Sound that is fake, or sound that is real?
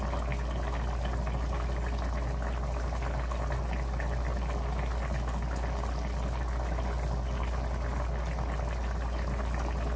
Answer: real